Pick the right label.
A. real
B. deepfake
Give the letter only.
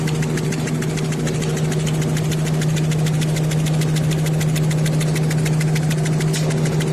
A